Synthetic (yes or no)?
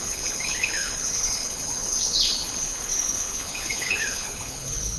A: yes